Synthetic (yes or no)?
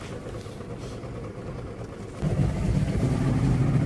no